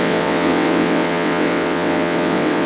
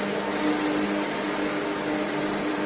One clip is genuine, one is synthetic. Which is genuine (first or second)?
second